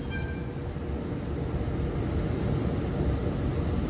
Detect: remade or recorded recorded